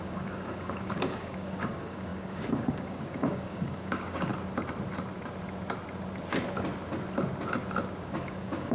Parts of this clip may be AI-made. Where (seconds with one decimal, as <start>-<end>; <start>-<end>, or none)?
0.0-4.3; 8.1-8.7